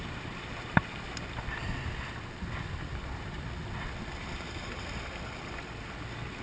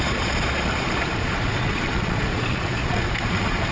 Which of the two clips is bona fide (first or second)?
first